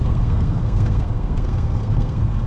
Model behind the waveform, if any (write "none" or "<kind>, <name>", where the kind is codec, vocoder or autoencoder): codec, SNAC